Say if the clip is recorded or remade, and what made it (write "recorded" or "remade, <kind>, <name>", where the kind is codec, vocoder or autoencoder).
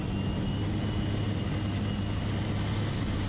recorded